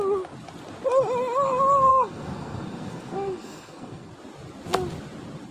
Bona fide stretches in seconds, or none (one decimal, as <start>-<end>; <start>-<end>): 0.0-1.9; 4.1-5.5